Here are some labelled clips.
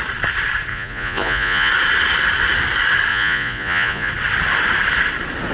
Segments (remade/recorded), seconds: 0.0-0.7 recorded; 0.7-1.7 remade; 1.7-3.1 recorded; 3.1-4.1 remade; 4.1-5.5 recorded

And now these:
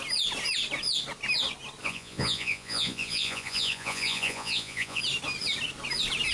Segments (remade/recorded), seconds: 0.0-1.8 recorded; 1.8-5.0 remade; 5.0-6.3 recorded

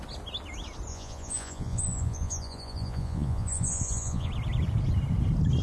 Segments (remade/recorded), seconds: 0.0-0.9 recorded; 0.9-4.3 remade; 4.3-5.6 recorded

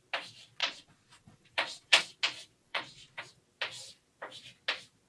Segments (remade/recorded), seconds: 0.0-0.6 recorded; 0.6-2.0 remade; 2.0-2.6 recorded; 2.6-3.2 remade; 3.2-5.1 recorded